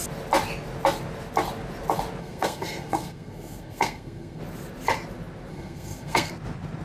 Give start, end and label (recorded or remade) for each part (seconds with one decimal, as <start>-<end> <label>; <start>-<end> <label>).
0.0-2.2 recorded; 2.2-4.4 remade; 4.4-5.5 recorded; 5.5-6.3 remade; 6.3-6.8 recorded